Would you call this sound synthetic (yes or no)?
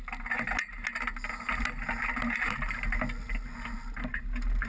no